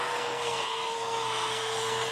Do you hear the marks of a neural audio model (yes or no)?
yes